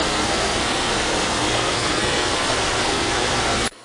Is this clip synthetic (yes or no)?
yes